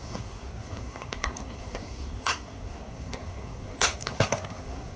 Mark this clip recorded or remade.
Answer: remade